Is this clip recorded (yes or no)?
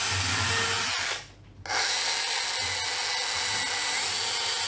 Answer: yes